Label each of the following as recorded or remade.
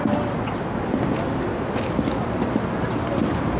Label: recorded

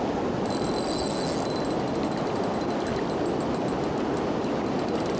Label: recorded